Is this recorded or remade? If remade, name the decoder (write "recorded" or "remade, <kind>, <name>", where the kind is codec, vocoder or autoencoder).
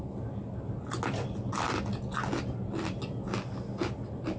recorded